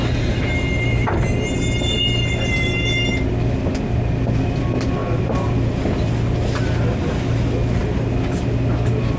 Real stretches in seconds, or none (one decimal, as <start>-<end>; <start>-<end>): 0.0-5.0; 6.1-9.2